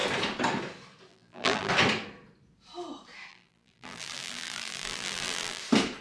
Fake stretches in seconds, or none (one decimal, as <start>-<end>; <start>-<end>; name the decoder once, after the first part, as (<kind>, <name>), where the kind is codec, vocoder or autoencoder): 1.1-1.7 (vocoder, BigVGAN v2); 3.3-5.6

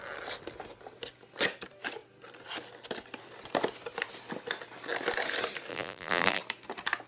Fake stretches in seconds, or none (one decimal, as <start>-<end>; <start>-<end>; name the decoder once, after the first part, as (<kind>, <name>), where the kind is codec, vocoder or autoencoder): 5.7-6.4 (vocoder, BigVGAN v2)

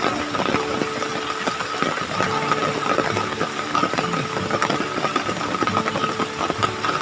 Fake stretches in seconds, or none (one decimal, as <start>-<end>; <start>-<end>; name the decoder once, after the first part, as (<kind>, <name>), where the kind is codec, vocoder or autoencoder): 2.6-7.0 (vocoder, BigVGAN v2)